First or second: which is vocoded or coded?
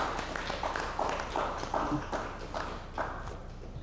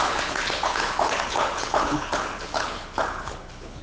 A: second